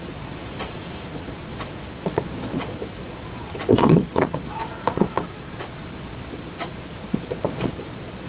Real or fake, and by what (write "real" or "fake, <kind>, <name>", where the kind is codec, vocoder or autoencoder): fake, vocoder, Vocos